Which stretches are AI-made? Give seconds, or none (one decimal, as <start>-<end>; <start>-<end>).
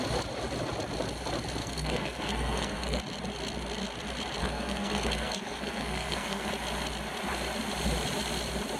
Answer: 1.6-3.0; 4.4-6.5